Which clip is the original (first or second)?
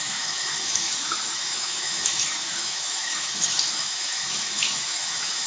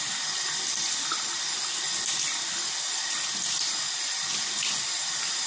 second